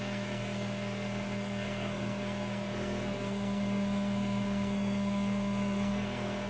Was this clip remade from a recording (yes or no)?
yes